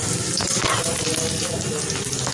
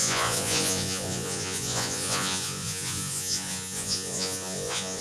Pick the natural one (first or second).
first